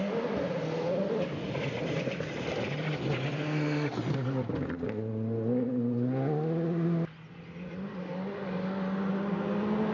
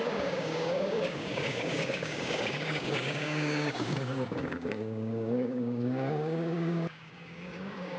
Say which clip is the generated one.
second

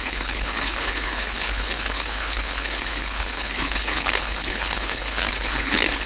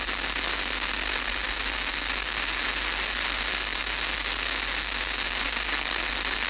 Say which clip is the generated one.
first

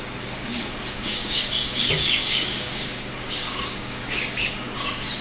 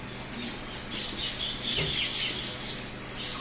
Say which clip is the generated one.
first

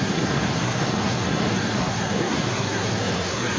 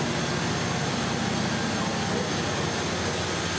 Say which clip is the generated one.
first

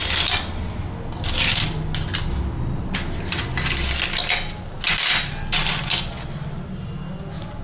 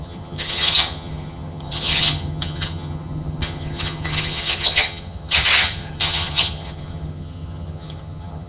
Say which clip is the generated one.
second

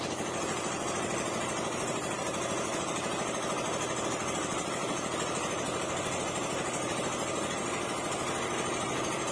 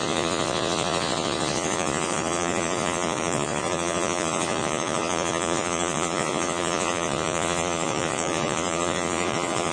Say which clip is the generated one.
second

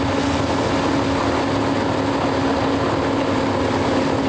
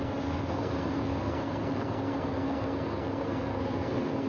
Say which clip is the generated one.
second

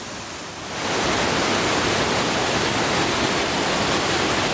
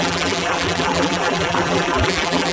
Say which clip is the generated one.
second